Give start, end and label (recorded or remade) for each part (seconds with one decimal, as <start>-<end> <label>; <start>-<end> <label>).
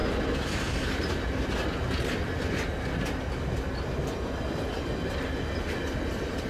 0.0-6.5 recorded